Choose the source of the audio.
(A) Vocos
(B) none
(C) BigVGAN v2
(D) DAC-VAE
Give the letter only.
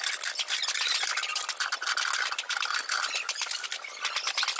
B